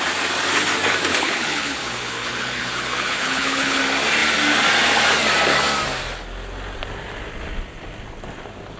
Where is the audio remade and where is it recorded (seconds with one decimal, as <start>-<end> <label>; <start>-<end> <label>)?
0.0-1.1 recorded; 1.1-3.8 remade; 3.8-8.8 recorded